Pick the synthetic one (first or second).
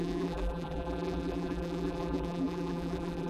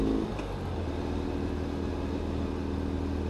first